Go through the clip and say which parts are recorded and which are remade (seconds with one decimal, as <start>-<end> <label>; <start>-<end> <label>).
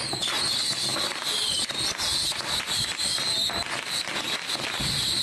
0.0-5.2 recorded